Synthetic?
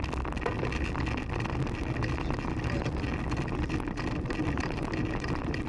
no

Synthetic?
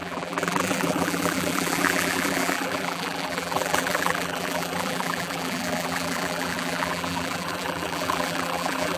yes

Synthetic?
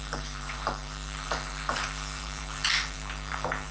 yes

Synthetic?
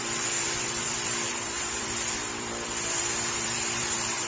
yes